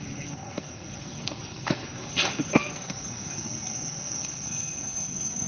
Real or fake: fake